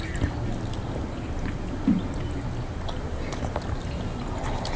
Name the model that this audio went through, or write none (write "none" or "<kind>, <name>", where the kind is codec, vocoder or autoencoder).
none